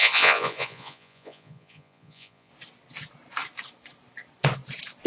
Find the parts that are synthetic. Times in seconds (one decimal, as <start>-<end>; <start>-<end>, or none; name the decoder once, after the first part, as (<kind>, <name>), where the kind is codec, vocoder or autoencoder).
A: 0.0-2.5 (vocoder, Vocos)